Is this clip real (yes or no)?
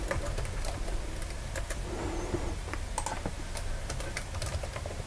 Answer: yes